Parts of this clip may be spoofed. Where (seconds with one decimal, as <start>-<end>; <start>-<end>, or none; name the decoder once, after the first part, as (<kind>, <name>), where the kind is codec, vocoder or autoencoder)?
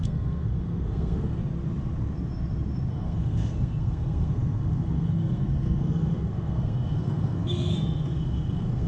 0.0-1.4 (codec, SNAC); 2.9-8.9